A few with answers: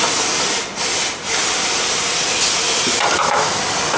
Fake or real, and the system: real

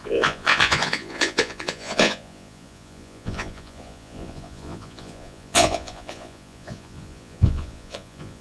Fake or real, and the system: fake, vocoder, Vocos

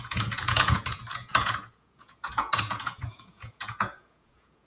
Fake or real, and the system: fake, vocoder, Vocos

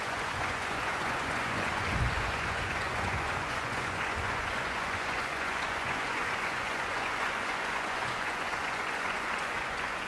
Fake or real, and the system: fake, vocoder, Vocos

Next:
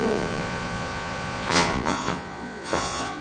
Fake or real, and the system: fake, vocoder, Vocos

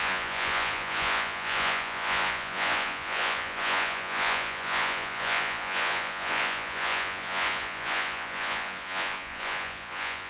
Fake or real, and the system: fake, vocoder, Vocos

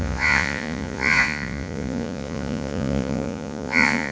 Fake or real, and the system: fake, vocoder, Vocos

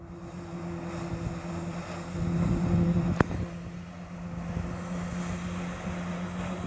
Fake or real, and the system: real